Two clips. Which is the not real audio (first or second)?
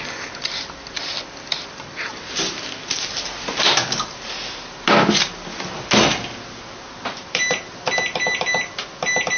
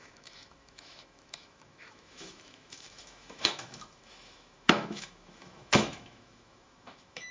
second